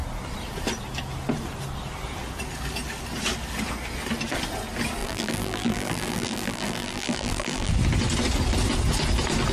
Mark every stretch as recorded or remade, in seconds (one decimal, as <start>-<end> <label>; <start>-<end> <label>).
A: 0.0-5.0 recorded; 5.0-7.7 remade; 7.7-9.5 recorded